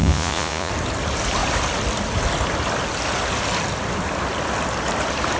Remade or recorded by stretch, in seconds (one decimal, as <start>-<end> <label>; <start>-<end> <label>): 0.0-0.7 remade; 0.7-5.4 recorded